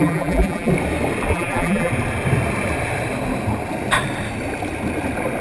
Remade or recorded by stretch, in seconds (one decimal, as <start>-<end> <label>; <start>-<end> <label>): 0.0-0.7 remade; 0.7-1.3 recorded; 1.3-1.9 remade; 1.9-5.4 recorded